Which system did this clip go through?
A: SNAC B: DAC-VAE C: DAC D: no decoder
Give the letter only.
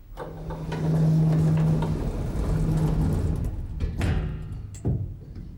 D